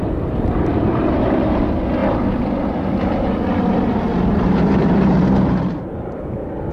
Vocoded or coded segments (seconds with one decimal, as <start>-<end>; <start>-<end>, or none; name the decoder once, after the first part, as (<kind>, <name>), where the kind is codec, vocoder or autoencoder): 0.7-1.6 (vocoder, BigVGAN v2); 4.1-6.7